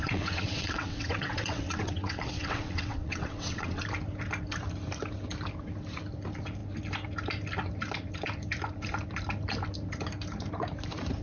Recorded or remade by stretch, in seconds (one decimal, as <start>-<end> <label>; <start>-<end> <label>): 0.0-3.8 remade; 3.8-11.2 recorded